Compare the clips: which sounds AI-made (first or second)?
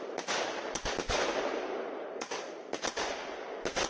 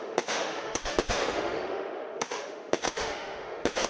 second